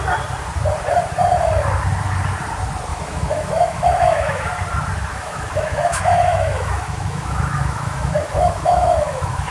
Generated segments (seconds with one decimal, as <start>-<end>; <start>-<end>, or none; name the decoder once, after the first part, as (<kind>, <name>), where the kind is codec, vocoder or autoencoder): 2.9-4.5 (autoencoder, DAC-VAE); 5.1-9.5